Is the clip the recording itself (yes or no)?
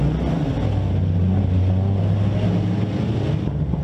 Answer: yes